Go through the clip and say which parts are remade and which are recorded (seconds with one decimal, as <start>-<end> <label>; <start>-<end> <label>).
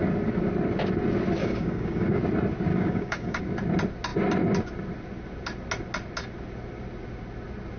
0.0-1.4 recorded; 1.4-2.2 remade; 2.2-2.7 recorded; 2.7-3.4 remade; 3.4-7.8 recorded